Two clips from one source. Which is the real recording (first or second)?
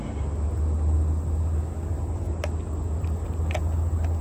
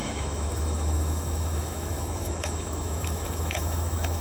first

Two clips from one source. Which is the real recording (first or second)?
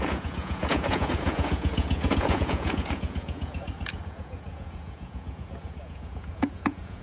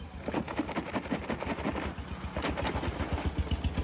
second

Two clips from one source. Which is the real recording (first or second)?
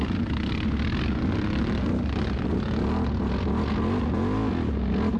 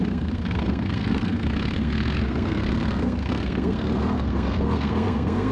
first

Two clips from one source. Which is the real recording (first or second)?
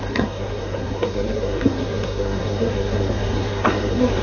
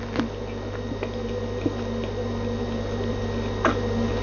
second